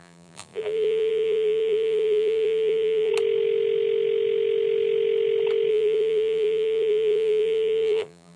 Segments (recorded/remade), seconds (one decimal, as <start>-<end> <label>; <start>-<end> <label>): 0.0-3.1 remade; 3.1-5.7 recorded; 5.7-8.4 remade